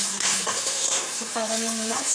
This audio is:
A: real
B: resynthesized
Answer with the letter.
B